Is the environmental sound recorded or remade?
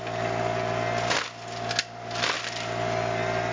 recorded